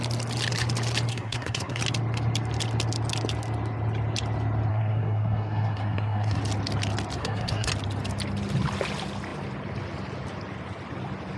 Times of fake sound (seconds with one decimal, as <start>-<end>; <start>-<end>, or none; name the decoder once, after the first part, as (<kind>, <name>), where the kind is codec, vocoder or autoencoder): 1.1-1.8 (codec, SNAC); 4.7-6.4; 7.2-7.7

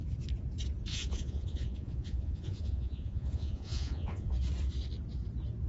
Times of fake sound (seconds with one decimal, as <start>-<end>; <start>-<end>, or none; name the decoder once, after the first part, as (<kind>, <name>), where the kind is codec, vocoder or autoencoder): 0.9-4.3 (vocoder, Vocos)

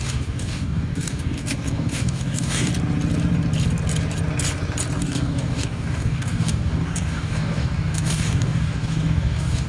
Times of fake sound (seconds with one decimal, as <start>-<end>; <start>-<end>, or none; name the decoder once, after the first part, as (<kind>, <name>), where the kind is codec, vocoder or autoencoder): 0.0-2.7 (codec, DAC); 5.0-9.7

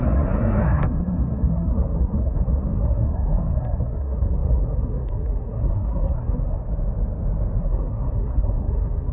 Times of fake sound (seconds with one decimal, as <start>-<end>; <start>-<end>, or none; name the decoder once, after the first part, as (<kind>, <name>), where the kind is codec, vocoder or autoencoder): 0.0-6.6 (codec, SNAC); 7.6-9.1

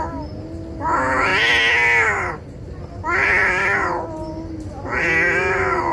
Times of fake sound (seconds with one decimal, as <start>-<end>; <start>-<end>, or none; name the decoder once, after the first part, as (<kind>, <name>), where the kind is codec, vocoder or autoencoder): none

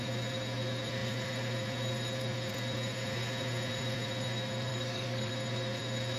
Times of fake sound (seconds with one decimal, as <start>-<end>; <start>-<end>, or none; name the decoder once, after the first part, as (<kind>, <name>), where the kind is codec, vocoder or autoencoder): 4.7-5.3 (codec, DAC)

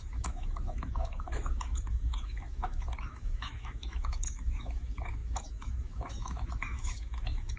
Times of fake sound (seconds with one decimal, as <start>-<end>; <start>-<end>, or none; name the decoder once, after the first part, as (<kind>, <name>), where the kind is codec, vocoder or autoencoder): 0.0-7.6 (autoencoder, DAC-VAE)

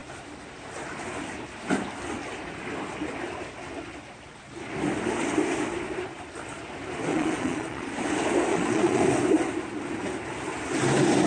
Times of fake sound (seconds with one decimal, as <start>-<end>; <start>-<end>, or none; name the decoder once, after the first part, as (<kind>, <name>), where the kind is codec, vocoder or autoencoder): 7.1-7.9 (vocoder, Vocos); 8.5-9.0